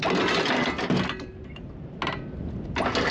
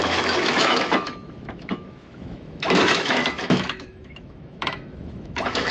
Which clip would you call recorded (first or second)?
first